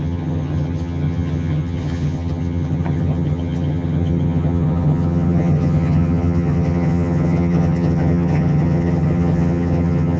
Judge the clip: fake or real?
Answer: fake